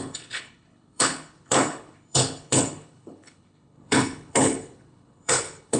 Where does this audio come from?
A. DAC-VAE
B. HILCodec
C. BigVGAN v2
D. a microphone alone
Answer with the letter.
B